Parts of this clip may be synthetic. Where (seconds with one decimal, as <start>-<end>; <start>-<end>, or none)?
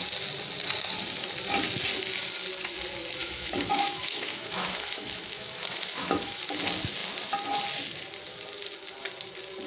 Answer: 3.2-6.4